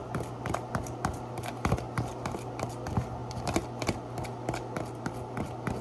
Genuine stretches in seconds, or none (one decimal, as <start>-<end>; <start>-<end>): 0.0-5.8